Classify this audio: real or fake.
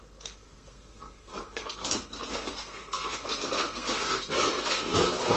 fake